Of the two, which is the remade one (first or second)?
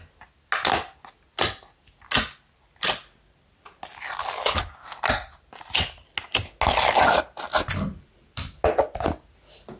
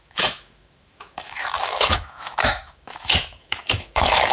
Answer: second